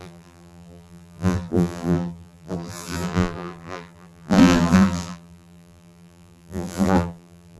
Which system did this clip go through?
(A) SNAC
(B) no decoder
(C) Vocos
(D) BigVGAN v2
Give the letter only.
D